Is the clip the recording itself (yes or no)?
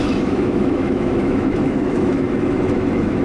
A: no